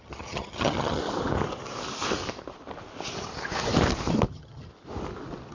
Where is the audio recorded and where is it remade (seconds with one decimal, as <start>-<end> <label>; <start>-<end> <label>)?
0.0-1.0 remade; 1.0-4.3 recorded; 4.3-4.7 remade; 4.7-5.5 recorded